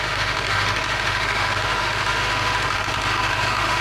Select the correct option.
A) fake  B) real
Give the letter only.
A